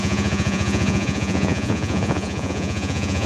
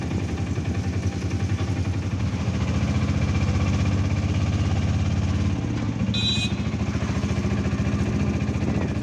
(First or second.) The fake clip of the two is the first